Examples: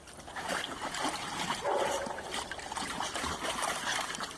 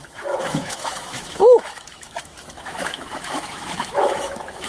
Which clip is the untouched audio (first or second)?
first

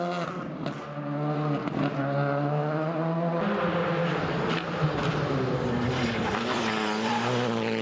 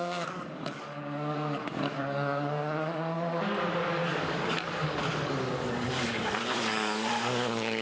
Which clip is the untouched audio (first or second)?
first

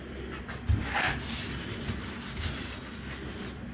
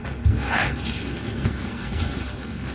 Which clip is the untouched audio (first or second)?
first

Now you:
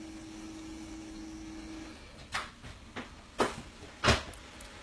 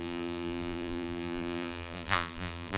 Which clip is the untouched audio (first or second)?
first